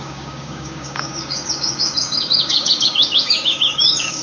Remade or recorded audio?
remade